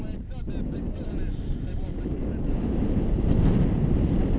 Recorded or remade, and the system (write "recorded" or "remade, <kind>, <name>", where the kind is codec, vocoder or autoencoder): recorded